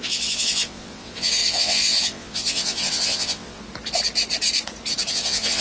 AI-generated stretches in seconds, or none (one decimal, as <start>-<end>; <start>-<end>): 0.0-3.6; 5.1-5.6